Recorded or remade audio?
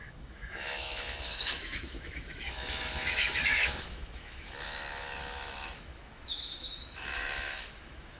remade